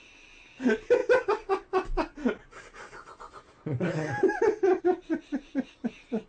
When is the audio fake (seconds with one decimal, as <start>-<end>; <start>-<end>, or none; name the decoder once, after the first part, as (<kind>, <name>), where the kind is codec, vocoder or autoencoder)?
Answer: none